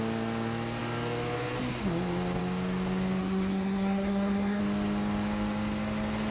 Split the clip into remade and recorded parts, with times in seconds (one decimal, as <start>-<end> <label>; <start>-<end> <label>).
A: 0.0-3.2 recorded; 3.2-4.6 remade; 4.6-6.3 recorded